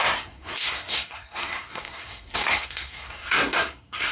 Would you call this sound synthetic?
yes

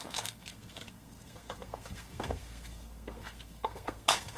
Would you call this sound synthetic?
yes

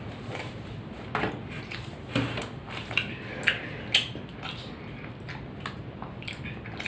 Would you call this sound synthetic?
no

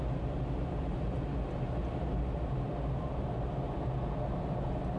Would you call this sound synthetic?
no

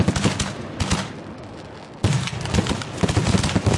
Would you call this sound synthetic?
no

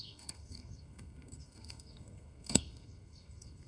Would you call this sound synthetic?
yes